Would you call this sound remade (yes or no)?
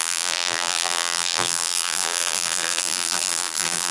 yes